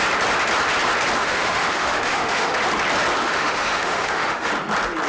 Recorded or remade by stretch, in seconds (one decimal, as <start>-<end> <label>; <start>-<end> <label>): 0.0-1.2 recorded; 1.2-2.5 remade; 2.5-3.2 recorded; 3.2-4.5 remade; 4.5-5.1 recorded